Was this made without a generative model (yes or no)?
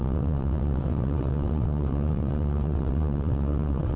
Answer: no